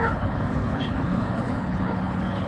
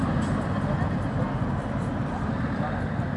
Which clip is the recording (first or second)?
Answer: second